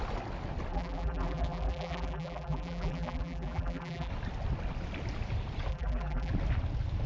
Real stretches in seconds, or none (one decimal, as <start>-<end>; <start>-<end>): 0.0-0.7; 4.1-5.7; 6.3-7.1